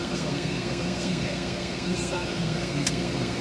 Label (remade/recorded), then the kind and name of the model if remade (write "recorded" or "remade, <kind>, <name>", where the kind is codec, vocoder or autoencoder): remade, codec, SNAC